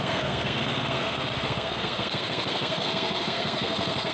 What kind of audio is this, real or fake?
fake